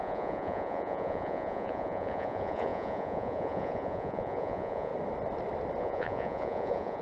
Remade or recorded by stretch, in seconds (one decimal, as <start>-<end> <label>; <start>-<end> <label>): 0.0-4.9 remade; 4.9-5.8 recorded; 5.8-7.0 remade